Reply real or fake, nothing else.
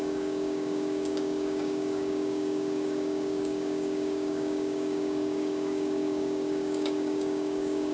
fake